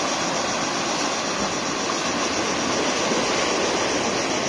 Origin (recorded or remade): recorded